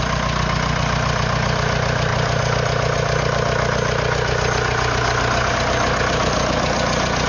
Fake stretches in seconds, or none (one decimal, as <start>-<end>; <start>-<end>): none